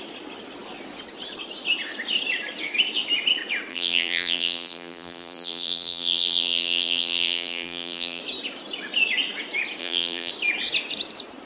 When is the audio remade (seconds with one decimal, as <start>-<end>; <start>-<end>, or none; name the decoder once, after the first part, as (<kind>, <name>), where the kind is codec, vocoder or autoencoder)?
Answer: 3.7-8.2 (vocoder, BigVGAN v2); 9.8-10.3